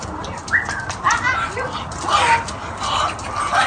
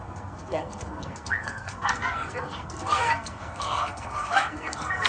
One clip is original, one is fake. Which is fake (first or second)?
second